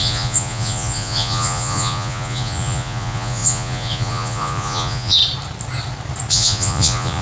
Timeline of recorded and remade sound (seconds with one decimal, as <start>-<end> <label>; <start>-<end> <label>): 0.0-5.2 remade; 5.2-6.3 recorded; 6.3-7.2 remade

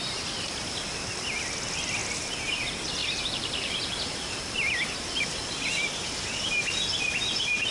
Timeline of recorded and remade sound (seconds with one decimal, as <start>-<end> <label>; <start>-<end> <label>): 0.0-3.0 recorded; 3.0-5.3 remade; 5.3-7.7 recorded

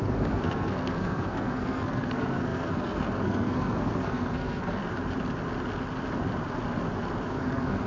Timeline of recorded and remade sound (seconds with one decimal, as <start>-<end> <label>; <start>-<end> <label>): 0.0-4.8 remade; 4.8-7.3 recorded; 7.3-7.9 remade